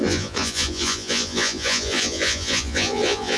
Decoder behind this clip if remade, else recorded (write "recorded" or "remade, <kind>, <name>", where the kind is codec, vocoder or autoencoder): remade, vocoder, Vocos